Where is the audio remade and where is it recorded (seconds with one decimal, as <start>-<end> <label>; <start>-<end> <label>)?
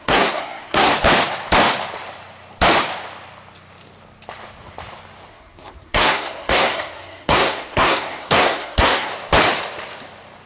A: 0.0-0.9 remade; 0.9-5.3 recorded; 5.3-9.1 remade; 9.1-10.5 recorded